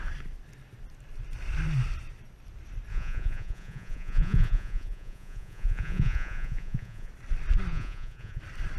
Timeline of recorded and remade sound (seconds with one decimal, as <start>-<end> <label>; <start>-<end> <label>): 0.0-2.9 recorded; 2.9-7.1 remade; 7.1-7.7 recorded; 7.7-8.4 remade; 8.4-8.8 recorded